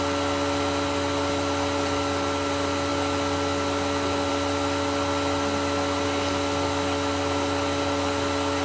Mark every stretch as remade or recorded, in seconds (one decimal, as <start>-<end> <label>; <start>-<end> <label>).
0.0-8.6 recorded